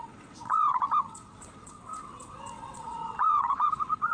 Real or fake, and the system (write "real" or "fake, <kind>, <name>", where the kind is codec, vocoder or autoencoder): fake, vocoder, WaveNeXt